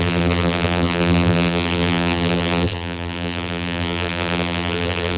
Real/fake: fake